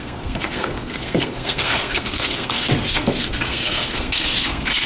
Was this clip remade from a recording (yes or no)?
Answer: yes